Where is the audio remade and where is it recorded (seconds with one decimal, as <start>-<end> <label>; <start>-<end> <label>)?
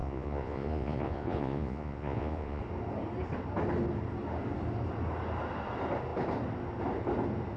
0.0-2.6 remade; 2.6-7.6 recorded